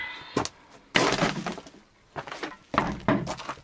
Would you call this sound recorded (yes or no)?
yes